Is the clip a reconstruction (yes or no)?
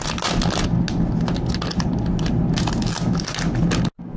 no